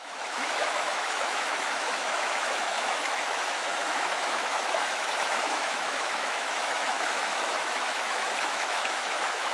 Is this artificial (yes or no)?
yes